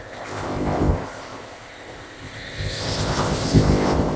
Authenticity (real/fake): fake